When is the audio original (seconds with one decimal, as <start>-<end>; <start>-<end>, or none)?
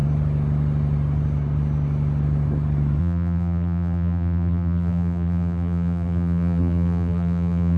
0.0-3.0